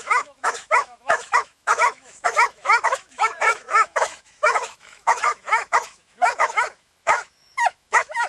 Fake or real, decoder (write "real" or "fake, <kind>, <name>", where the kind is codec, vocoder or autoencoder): fake, autoencoder, DAC-VAE